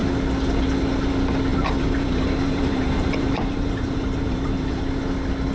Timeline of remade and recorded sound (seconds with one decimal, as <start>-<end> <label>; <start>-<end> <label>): 0.0-1.5 recorded; 1.5-4.8 remade; 4.8-5.5 recorded